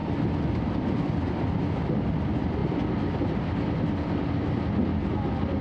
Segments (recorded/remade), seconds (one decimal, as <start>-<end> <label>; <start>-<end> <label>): 0.0-5.6 recorded